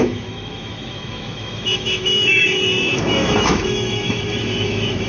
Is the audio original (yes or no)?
no